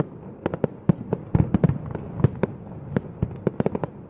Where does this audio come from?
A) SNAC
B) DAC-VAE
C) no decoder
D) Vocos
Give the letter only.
C